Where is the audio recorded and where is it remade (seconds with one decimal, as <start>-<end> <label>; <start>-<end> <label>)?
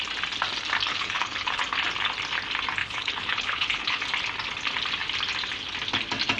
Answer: 0.0-0.9 recorded; 0.9-1.6 remade; 1.6-2.8 recorded; 2.8-4.0 remade; 4.0-6.4 recorded